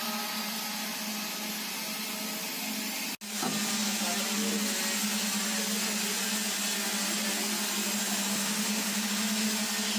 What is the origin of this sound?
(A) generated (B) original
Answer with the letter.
B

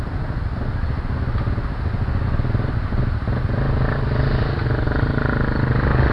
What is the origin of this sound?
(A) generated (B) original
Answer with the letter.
B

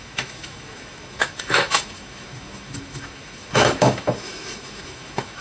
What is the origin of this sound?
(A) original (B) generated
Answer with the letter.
B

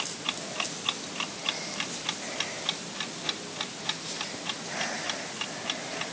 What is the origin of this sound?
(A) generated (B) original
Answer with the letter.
B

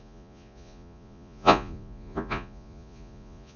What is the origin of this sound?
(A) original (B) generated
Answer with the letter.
B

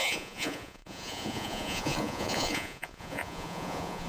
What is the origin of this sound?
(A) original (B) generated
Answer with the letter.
B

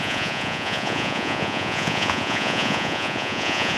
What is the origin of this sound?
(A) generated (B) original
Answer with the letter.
A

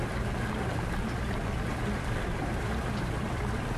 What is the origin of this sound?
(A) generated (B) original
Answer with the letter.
A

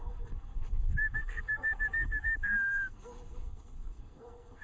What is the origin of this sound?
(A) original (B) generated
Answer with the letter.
B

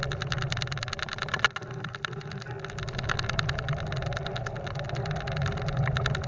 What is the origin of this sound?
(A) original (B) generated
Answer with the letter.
A